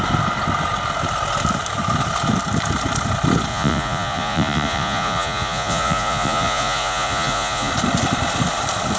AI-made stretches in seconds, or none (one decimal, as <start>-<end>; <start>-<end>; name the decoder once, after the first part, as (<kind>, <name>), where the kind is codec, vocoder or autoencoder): 3.5-7.7 (vocoder, Vocos)